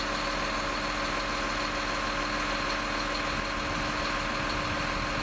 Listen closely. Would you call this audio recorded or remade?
recorded